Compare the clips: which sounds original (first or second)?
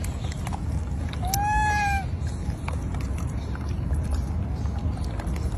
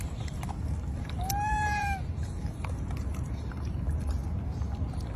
first